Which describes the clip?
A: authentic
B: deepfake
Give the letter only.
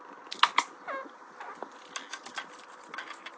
A